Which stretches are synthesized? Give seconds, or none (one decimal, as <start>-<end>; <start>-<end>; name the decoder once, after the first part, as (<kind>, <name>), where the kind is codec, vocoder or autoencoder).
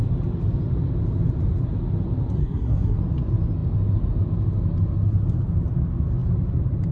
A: 2.4-3.0 (codec, SNAC)